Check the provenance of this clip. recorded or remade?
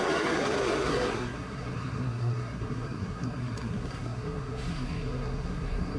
remade